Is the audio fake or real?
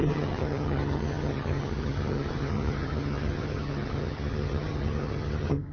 fake